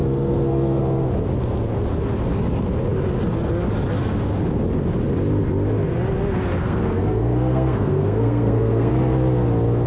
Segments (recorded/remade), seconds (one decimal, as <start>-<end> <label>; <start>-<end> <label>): 0.0-0.8 remade; 0.8-6.6 recorded; 6.6-8.9 remade; 8.9-9.9 recorded